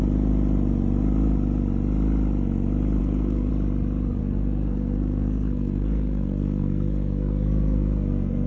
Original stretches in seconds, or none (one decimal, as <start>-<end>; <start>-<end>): 0.0-3.0; 3.5-4.2